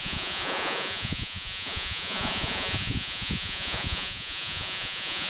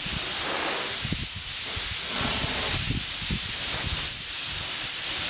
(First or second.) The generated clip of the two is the first